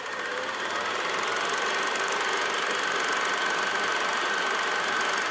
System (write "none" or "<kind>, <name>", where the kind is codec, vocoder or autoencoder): none